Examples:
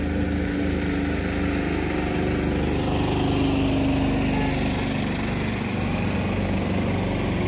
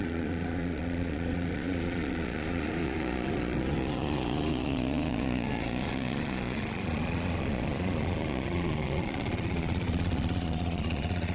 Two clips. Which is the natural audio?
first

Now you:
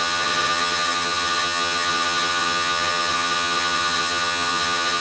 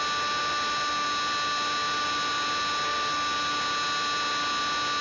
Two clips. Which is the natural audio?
second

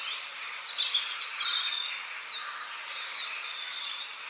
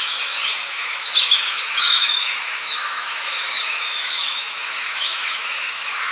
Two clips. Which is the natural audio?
first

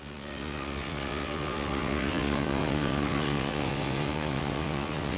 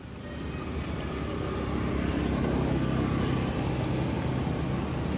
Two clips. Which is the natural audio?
second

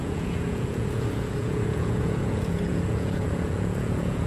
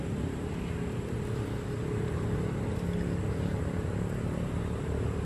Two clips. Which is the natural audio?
second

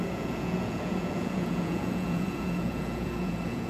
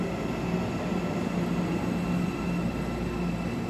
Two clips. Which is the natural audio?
second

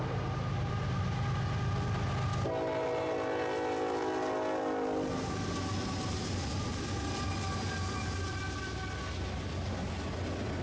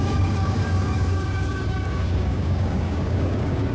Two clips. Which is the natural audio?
first